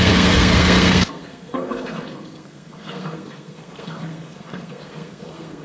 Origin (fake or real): fake